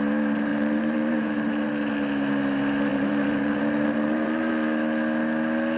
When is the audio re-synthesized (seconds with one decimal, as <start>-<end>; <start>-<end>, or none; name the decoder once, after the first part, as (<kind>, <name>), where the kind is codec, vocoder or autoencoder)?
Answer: 0.5-1.9 (vocoder, BigVGAN v2); 2.9-4.5